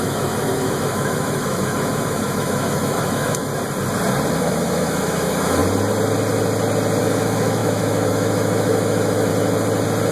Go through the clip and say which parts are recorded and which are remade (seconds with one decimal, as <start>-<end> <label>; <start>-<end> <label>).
0.0-3.5 remade; 3.5-4.3 recorded; 4.3-5.6 remade; 5.6-7.0 recorded; 7.0-9.3 remade; 9.3-10.1 recorded